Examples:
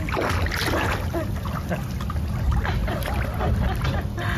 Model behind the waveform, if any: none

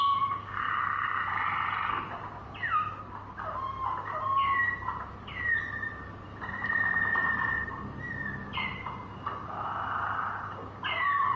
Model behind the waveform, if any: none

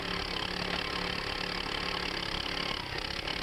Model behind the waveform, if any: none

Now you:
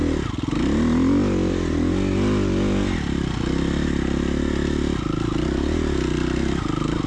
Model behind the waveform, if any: none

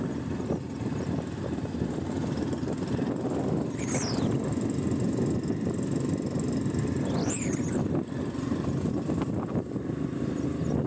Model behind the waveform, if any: none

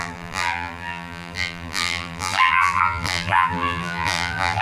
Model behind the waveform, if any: vocoder, BigVGAN v2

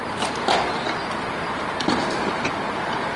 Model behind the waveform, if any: vocoder, BigVGAN v2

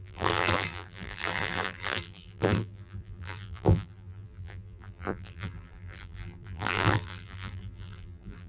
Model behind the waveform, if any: vocoder, BigVGAN v2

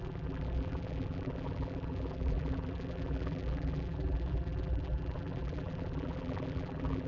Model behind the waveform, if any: vocoder, BigVGAN v2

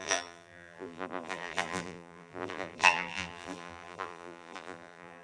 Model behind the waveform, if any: vocoder, BigVGAN v2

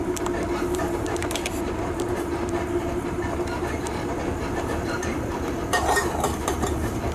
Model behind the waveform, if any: vocoder, BigVGAN v2